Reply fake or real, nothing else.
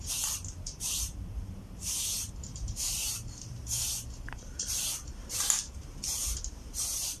fake